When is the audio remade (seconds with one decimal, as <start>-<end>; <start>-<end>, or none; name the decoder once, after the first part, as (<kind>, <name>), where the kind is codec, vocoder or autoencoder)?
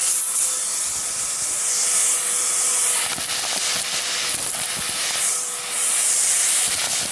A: none